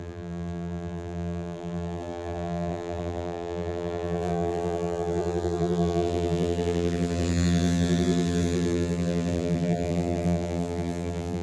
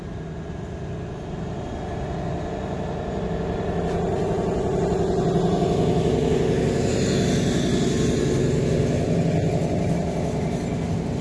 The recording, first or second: second